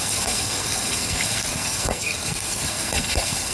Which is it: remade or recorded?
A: remade